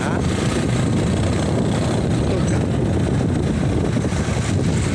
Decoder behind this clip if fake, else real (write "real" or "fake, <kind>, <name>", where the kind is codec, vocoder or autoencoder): real